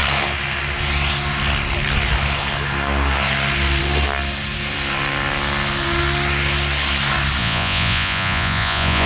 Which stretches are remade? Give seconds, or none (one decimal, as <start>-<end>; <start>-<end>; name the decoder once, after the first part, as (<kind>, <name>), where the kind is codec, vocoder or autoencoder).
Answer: 7.4-9.1 (vocoder, Vocos)